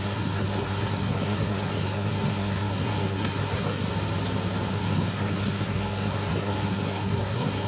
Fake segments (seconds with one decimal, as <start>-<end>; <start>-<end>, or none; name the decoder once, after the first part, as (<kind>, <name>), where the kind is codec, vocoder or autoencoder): 0.0-3.9 (codec, SNAC); 4.7-7.7